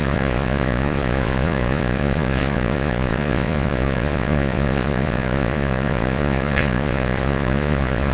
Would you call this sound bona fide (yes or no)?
no